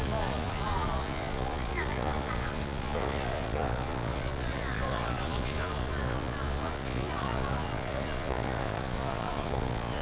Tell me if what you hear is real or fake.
fake